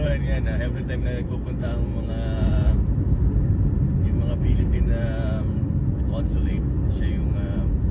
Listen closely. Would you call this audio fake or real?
real